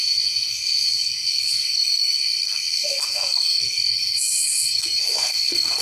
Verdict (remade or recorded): remade